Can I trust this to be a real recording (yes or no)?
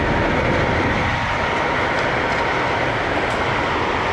yes